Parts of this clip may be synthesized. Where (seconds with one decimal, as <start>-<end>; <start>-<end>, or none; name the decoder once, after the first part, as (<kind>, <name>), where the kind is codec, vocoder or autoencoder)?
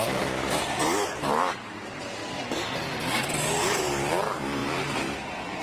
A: none